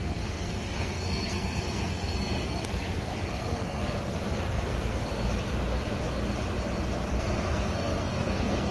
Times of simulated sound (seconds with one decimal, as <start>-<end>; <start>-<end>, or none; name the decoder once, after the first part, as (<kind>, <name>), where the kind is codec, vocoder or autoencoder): 0.0-5.1 (codec, SNAC); 7.1-8.7